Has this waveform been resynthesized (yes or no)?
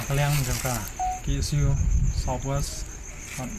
no